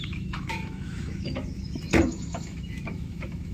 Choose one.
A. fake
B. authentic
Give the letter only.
A